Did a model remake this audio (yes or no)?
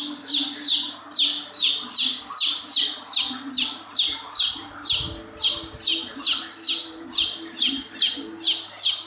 no